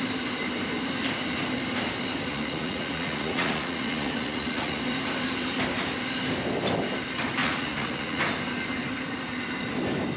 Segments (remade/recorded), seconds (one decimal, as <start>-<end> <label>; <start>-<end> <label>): 0.0-2.3 recorded; 2.3-4.8 remade; 4.8-7.4 recorded; 7.4-8.2 remade; 8.2-10.2 recorded